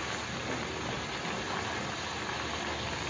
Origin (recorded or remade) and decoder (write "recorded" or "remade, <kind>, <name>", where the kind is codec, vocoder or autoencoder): recorded